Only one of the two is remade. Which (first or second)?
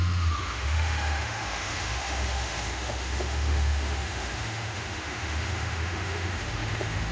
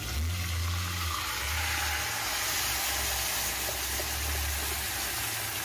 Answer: first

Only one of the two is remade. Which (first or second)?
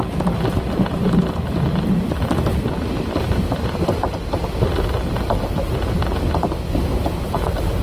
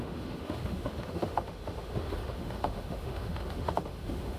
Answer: second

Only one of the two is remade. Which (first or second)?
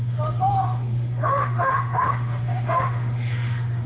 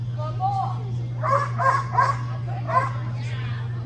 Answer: first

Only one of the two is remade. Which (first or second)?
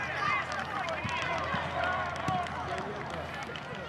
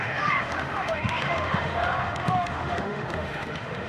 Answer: second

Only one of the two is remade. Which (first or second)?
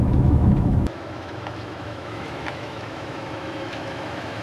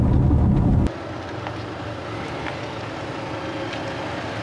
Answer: first